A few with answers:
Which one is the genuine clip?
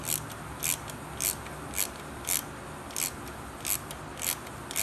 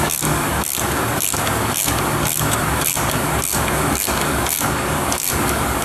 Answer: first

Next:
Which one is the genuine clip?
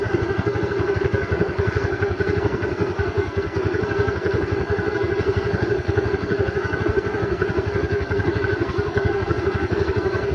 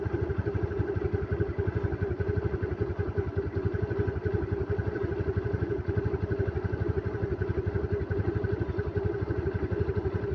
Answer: second